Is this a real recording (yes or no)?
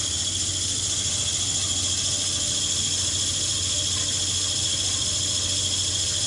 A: yes